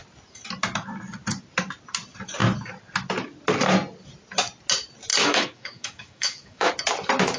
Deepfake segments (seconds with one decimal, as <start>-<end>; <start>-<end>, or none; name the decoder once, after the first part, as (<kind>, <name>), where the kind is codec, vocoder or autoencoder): 5.1-6.7 (autoencoder, DAC-VAE)